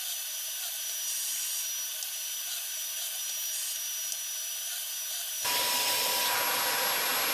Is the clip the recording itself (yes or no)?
yes